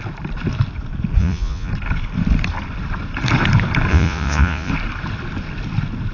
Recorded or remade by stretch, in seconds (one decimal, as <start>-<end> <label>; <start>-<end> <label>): 0.0-1.2 recorded; 1.2-1.7 remade; 1.7-3.9 recorded; 3.9-4.7 remade; 4.7-6.1 recorded